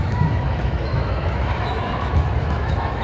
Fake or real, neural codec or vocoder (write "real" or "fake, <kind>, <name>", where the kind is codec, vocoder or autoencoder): fake, autoencoder, DAC-VAE